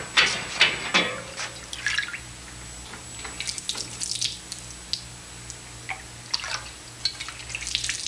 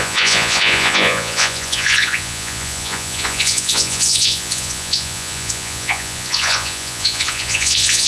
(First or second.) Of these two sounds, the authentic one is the first